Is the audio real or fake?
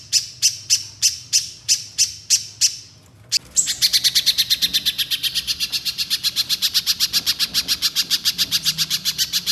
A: real